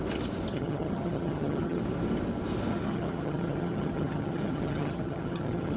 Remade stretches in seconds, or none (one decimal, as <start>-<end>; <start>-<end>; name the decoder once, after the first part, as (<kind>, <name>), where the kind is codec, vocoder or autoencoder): 0.5-1.8 (vocoder, HiFi-GAN); 2.7-5.8